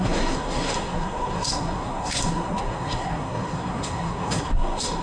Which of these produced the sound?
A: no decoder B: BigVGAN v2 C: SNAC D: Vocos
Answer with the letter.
C